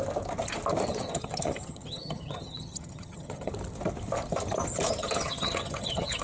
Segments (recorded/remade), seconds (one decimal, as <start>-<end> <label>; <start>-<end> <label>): 0.0-0.9 recorded; 0.9-3.5 remade; 3.5-5.0 recorded; 5.0-6.2 remade